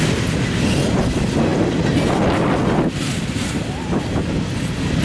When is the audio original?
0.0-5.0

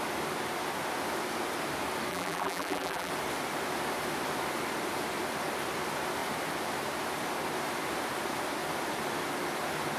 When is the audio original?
0.0-2.1; 3.1-10.0

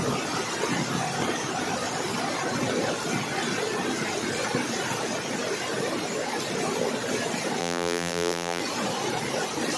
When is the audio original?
0.0-7.6; 8.6-9.8